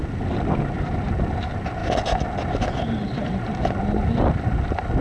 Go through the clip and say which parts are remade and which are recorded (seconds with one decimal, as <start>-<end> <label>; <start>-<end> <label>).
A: 0.0-5.0 recorded